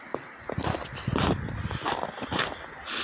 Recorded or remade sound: recorded